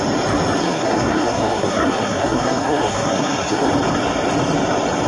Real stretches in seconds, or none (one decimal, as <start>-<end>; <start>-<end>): 0.0-0.6; 3.7-5.1